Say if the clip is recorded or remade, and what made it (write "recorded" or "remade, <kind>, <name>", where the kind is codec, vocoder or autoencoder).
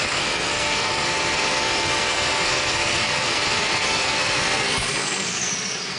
remade, codec, SNAC